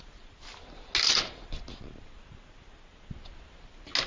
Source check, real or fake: real